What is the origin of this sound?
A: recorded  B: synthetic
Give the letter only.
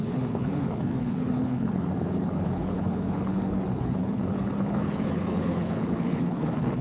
B